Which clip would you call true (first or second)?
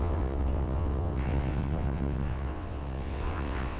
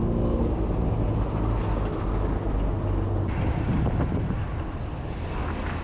second